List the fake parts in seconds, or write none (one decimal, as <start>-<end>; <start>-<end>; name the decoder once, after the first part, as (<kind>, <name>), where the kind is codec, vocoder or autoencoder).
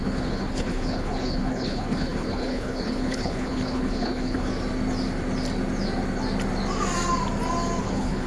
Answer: 0.0-4.5 (codec, HILCodec); 7.8-8.3